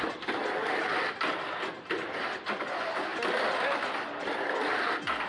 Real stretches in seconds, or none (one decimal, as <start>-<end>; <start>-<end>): 0.0-5.3